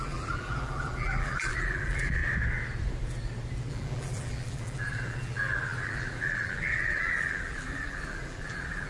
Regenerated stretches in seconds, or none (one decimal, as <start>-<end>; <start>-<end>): 0.0-2.2; 3.7-8.9